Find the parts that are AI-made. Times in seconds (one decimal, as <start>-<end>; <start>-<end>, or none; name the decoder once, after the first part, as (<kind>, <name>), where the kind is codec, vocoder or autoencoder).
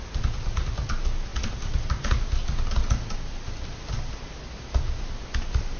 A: none